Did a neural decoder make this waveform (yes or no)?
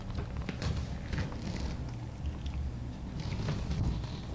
no